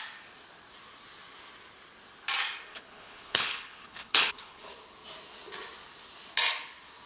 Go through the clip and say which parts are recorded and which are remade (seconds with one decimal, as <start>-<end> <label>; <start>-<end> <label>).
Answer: 0.0-2.7 recorded; 2.7-4.7 remade; 4.7-7.1 recorded